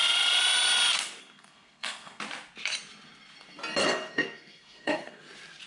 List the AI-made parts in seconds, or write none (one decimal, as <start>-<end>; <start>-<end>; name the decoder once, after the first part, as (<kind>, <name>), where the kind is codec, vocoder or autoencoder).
1.2-2.2 (codec, SNAC); 3.8-5.2